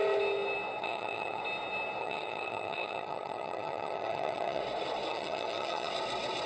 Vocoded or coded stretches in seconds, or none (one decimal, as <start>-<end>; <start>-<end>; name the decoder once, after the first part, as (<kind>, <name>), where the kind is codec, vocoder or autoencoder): 0.8-1.4 (vocoder, HiFi-GAN); 2.0-4.6; 5.1-5.9